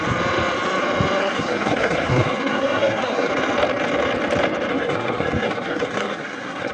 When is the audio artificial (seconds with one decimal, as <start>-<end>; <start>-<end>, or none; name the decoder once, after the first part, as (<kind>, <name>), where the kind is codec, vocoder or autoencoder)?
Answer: 1.2-3.3 (codec, SNAC); 4.7-6.7